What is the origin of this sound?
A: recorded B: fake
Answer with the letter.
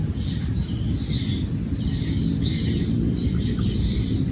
A